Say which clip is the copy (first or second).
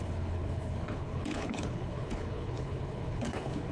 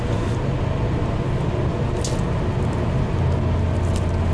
first